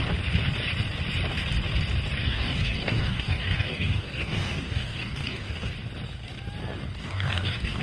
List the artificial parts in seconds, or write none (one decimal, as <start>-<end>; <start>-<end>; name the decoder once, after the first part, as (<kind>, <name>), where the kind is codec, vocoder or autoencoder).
2.2-5.7 (codec, DAC); 7.0-7.8